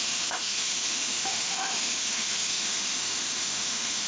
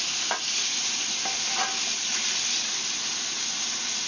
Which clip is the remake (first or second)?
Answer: first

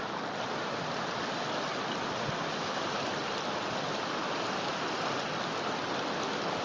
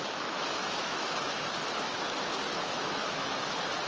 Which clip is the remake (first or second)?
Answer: second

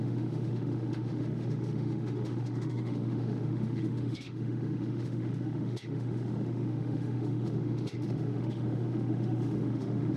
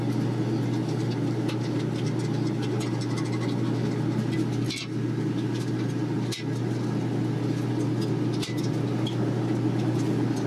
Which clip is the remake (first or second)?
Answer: first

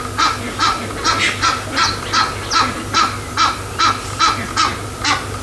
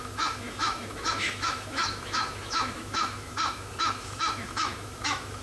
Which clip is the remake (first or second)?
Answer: second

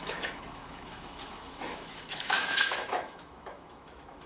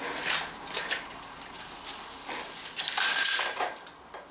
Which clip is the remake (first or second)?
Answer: first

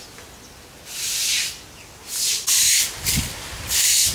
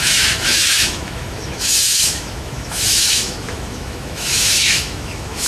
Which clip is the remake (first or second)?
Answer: second